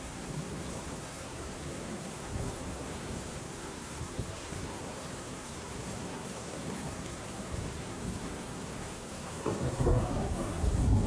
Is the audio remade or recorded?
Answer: remade